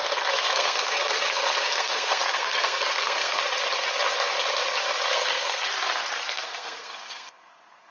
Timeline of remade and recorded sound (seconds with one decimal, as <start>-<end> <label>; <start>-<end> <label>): 0.0-3.4 remade; 3.4-5.1 recorded; 5.1-5.7 remade; 5.7-6.3 recorded; 6.3-7.9 remade